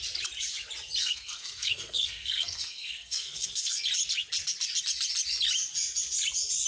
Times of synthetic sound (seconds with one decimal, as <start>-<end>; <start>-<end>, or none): 1.0-3.8